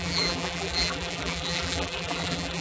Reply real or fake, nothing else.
fake